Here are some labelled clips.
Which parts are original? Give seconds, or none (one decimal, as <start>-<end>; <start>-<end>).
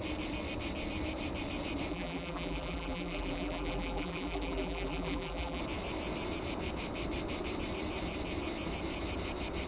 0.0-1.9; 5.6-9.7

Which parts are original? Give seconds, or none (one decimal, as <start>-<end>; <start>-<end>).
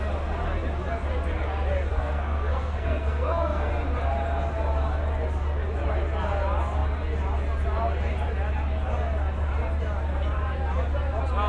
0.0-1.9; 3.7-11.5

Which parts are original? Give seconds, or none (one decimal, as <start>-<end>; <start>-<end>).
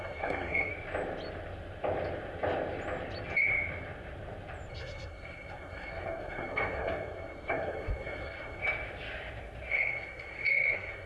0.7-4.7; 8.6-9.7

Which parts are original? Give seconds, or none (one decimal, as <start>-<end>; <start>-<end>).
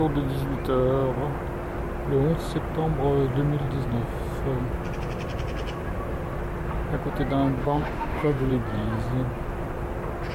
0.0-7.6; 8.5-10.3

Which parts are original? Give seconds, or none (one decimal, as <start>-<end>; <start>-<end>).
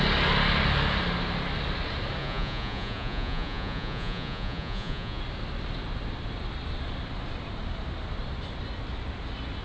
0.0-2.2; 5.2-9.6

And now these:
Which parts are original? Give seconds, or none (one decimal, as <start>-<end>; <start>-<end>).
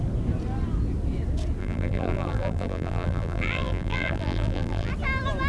0.0-1.6; 4.9-5.5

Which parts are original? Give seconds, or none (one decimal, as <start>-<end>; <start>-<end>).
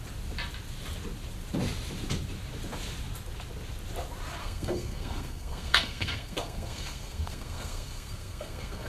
0.0-4.4